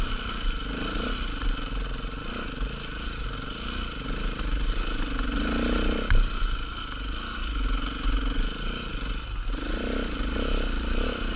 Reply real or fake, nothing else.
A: real